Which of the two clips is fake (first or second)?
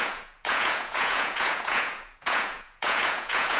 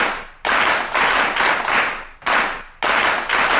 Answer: first